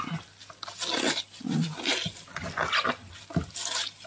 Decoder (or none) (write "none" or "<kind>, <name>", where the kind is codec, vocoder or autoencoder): none